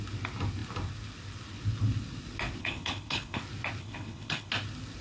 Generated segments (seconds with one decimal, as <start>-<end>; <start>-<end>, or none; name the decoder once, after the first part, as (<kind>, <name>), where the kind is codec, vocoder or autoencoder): 2.6-3.4 (codec, HILCodec); 3.8-4.5